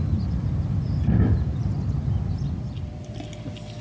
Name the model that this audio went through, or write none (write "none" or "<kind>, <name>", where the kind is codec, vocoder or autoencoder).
none